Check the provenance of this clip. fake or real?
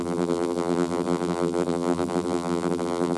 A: fake